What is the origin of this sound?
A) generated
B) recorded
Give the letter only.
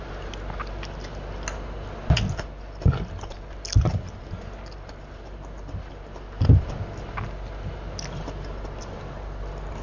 B